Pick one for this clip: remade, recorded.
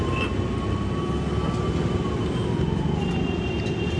recorded